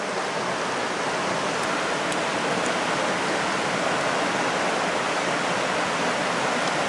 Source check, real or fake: real